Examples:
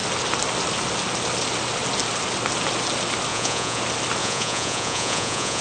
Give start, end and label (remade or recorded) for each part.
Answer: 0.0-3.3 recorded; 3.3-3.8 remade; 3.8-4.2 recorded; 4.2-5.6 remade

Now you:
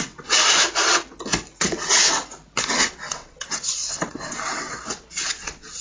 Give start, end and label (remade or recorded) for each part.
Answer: 0.0-0.4 remade; 0.4-1.6 recorded; 1.6-2.2 remade; 2.2-2.7 recorded; 2.7-5.8 remade